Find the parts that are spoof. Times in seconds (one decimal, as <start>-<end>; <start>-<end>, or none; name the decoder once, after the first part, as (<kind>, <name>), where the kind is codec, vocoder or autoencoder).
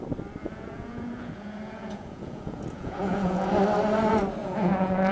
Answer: 0.4-3.5 (vocoder, Vocos); 4.4-5.1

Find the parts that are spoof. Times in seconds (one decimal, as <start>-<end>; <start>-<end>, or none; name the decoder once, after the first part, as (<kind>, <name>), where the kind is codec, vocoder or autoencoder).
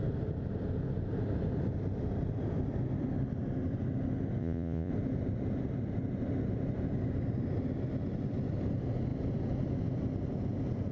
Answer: 4.4-4.9 (vocoder, Vocos)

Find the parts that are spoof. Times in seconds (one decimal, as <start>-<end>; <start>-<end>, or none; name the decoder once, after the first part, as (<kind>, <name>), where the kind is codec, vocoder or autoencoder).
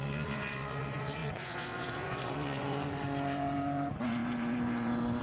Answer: 0.0-5.2 (vocoder, Vocos)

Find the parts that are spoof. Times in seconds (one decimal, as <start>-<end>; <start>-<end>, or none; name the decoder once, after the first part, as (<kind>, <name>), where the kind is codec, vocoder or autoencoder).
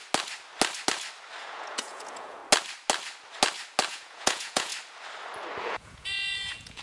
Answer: 1.4-2.4 (vocoder, Vocos); 3.9-4.7; 5.6-6.8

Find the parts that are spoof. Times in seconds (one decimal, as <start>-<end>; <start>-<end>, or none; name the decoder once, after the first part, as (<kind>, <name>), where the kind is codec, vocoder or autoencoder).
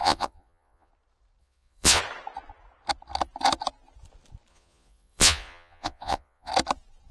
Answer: 0.0-0.9 (vocoder, Vocos); 1.4-2.0; 4.5-6.5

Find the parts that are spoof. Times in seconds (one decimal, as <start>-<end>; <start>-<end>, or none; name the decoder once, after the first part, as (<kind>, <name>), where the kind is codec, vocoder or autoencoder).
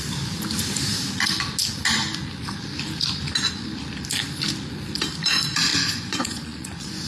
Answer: 5.7-7.1 (vocoder, Vocos)